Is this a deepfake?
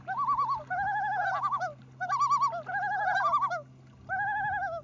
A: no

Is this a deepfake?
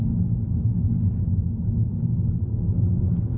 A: no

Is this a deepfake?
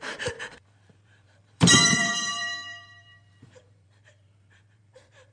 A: yes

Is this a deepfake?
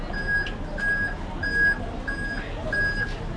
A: no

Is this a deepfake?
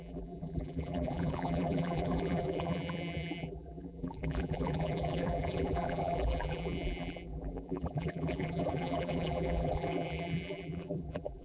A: yes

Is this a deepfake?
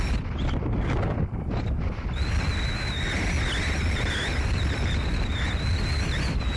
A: no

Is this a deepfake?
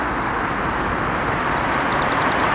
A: no